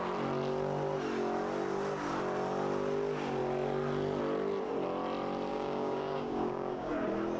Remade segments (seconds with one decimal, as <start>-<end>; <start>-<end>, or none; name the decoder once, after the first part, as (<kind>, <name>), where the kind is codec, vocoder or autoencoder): 5.5-6.9 (codec, DAC)